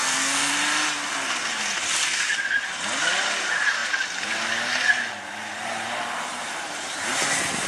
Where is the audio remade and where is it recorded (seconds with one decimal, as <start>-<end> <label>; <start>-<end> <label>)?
0.0-0.5 remade; 0.5-7.7 recorded